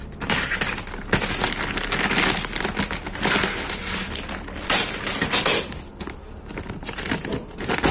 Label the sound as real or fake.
real